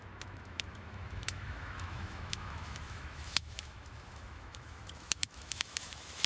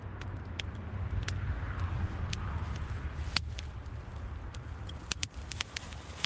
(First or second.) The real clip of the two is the second